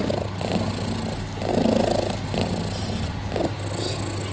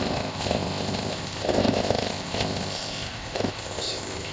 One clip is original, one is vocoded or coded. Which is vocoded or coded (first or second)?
second